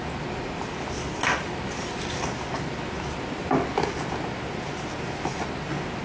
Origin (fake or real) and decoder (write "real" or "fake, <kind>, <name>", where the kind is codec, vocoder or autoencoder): real